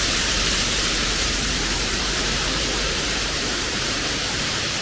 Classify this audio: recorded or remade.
remade